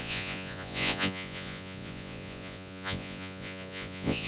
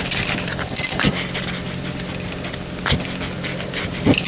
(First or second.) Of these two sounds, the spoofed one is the first